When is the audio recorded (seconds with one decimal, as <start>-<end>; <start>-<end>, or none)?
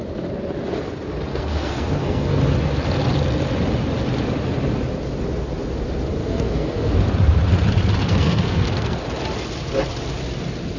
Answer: 0.0-1.3; 2.4-6.2; 6.9-8.0; 9.0-10.8